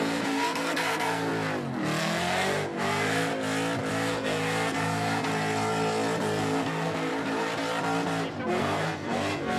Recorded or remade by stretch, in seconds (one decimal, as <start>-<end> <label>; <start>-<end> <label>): 0.0-1.3 remade; 1.3-2.0 recorded; 2.0-3.3 remade; 3.3-3.9 recorded; 3.9-5.3 remade; 5.3-6.4 recorded; 6.4-7.1 remade; 7.1-8.5 recorded; 8.5-9.6 remade